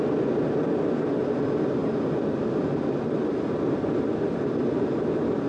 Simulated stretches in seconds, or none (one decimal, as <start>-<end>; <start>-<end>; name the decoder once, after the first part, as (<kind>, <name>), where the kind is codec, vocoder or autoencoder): none